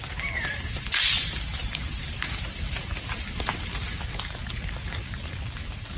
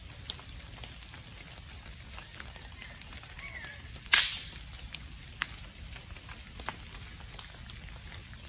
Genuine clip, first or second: second